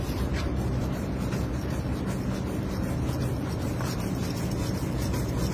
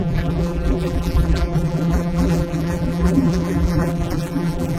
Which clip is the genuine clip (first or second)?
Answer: first